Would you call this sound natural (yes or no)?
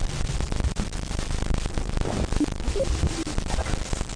yes